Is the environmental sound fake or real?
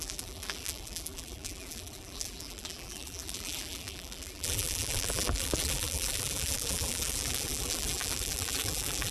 fake